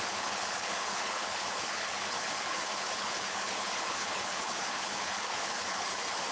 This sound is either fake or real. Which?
fake